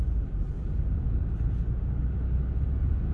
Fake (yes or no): no